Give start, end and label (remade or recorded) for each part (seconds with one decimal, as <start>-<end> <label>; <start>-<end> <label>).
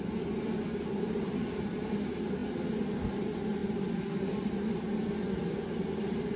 0.0-6.4 recorded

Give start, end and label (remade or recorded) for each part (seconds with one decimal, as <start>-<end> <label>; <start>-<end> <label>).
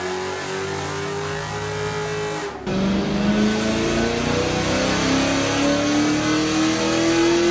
0.0-2.7 recorded; 2.7-3.3 remade; 3.3-7.5 recorded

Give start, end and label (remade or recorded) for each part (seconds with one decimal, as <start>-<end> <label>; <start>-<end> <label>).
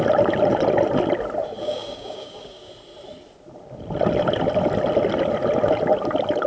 0.0-1.6 recorded; 1.6-2.7 remade; 2.7-6.5 recorded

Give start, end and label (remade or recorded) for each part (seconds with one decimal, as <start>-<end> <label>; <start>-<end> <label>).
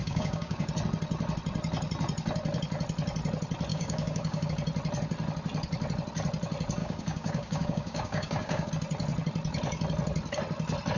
0.0-0.7 remade; 0.7-3.7 recorded; 3.7-4.5 remade; 4.5-6.8 recorded; 6.8-8.7 remade; 8.7-11.0 recorded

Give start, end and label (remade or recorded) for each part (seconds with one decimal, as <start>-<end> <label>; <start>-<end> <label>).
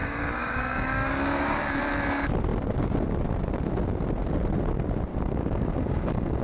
0.0-1.6 remade; 1.6-5.1 recorded; 5.1-6.4 remade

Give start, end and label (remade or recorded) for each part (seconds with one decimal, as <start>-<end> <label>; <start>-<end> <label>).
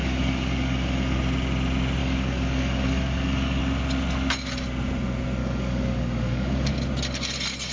0.0-1.2 remade; 1.2-2.0 recorded; 2.0-3.6 remade; 3.6-5.4 recorded; 5.4-6.7 remade; 6.7-7.7 recorded